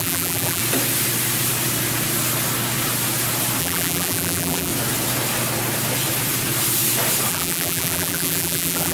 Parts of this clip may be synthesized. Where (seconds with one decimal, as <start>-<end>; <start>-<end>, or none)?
0.0-0.6; 3.6-4.7; 7.3-8.9